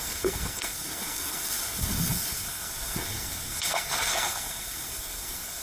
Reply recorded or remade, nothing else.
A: remade